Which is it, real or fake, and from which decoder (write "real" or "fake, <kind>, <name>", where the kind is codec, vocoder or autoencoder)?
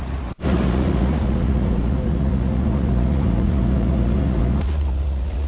fake, vocoder, Vocos